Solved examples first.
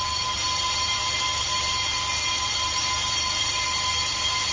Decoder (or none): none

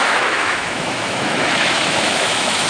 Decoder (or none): autoencoder, DAC-VAE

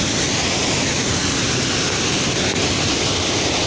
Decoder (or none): none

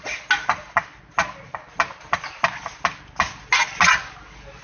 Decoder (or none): none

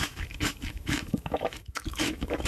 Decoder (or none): autoencoder, DAC-VAE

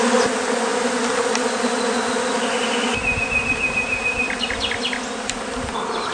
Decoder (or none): none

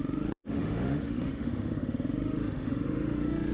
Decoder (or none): autoencoder, DAC-VAE